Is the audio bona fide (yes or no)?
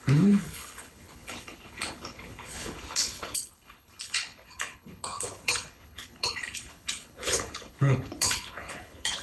no